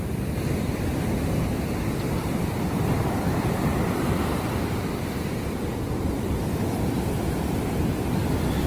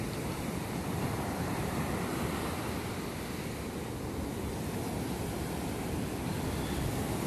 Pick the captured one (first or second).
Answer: second